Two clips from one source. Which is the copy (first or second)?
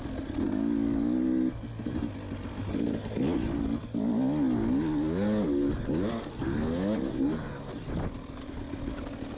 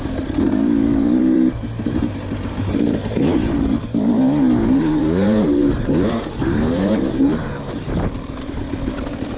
second